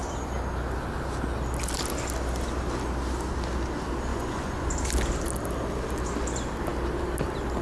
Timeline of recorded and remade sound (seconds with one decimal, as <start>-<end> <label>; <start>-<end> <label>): 0.0-4.1 recorded; 4.1-4.7 remade; 4.7-7.6 recorded